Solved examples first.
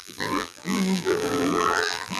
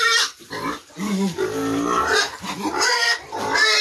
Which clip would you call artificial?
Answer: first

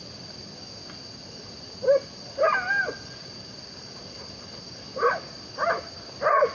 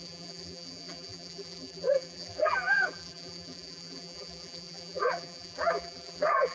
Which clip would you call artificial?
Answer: second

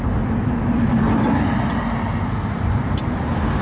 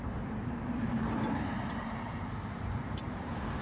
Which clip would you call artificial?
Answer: second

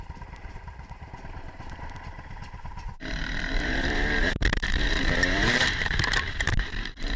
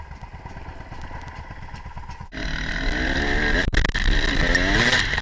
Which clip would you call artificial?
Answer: first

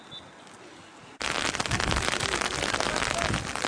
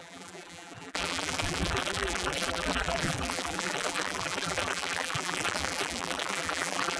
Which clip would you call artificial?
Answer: second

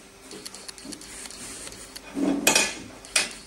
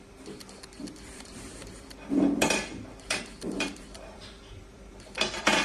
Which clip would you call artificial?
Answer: second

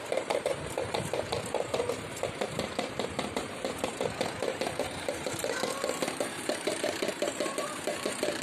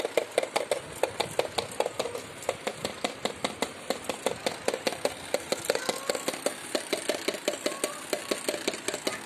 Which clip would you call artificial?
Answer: first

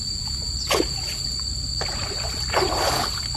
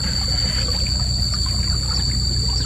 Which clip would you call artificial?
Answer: first